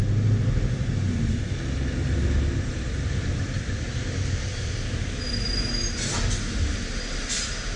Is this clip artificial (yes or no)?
no